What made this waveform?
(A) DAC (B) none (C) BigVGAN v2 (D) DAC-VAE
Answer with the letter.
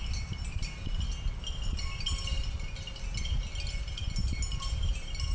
B